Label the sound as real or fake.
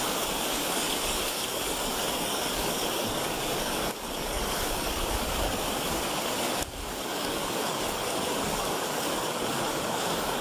fake